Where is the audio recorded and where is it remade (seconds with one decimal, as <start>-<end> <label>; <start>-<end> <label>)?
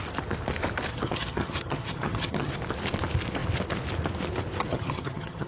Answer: 0.0-0.9 recorded; 0.9-2.5 remade; 2.5-4.7 recorded; 4.7-5.5 remade